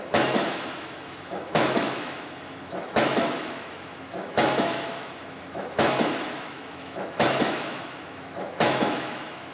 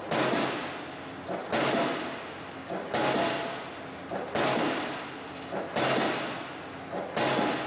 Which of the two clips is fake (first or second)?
first